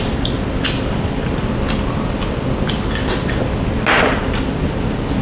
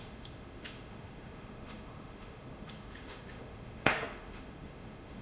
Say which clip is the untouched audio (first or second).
first